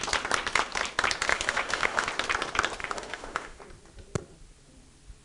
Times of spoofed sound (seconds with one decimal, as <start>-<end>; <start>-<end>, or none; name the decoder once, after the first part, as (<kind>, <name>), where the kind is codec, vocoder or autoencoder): 1.3-2.1 (autoencoder, DAC-VAE); 2.8-3.6